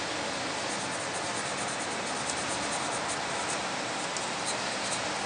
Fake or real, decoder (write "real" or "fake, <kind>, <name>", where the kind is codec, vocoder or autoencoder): real